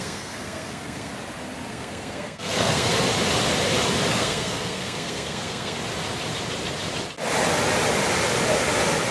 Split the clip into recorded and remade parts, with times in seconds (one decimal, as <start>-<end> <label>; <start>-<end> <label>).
0.0-1.1 remade; 1.1-1.7 recorded; 1.7-2.9 remade; 2.9-4.1 recorded; 4.1-5.8 remade; 5.8-9.1 recorded